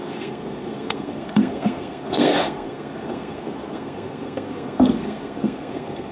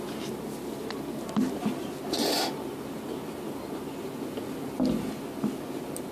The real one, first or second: second